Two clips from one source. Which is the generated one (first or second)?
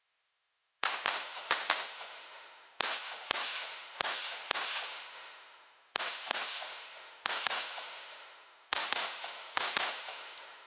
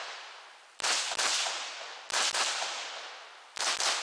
first